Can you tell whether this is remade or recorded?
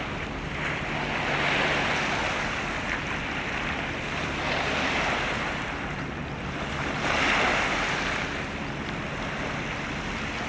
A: recorded